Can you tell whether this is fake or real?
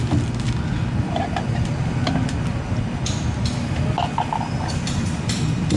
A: real